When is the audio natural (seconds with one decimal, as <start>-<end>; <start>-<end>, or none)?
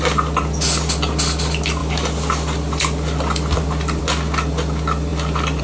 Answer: 0.0-5.6